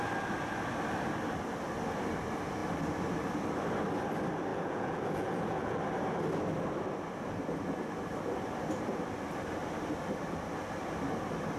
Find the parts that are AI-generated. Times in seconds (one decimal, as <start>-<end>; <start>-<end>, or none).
4.5-5.8